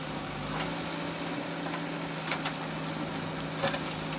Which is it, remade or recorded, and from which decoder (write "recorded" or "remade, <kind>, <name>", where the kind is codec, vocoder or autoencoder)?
recorded